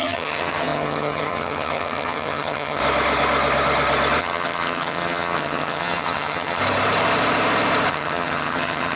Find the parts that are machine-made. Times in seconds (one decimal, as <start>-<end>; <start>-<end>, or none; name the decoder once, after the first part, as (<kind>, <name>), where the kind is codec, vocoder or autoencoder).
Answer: 0.0-2.8 (vocoder, HiFi-GAN); 4.2-6.6; 7.9-9.0